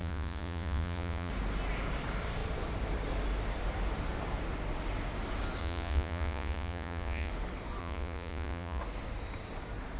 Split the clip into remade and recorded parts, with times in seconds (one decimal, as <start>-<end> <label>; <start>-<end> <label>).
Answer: 0.0-1.3 remade; 1.3-5.6 recorded; 5.6-7.3 remade; 7.3-7.8 recorded; 7.8-8.8 remade; 8.8-10.0 recorded